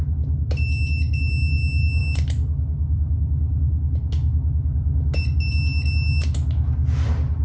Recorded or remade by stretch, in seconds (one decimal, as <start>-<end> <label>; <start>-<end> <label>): 0.0-7.4 recorded